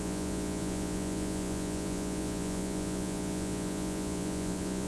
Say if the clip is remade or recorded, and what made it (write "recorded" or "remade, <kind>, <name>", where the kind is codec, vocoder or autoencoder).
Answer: remade, vocoder, Vocos